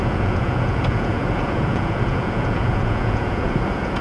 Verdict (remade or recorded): remade